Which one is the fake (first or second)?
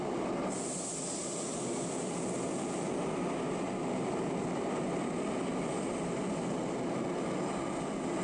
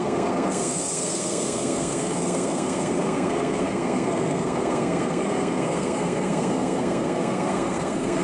second